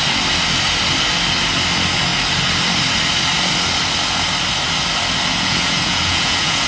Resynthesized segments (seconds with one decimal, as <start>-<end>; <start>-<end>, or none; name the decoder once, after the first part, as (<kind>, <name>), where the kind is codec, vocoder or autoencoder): 5.3-6.7 (vocoder, Vocos)